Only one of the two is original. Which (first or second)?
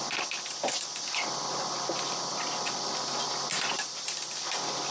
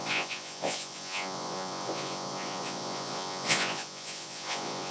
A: first